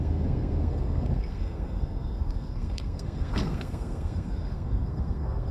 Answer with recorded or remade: remade